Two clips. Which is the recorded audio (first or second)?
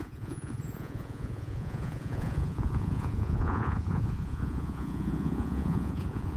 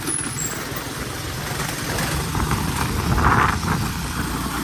second